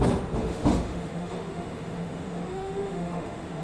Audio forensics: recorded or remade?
remade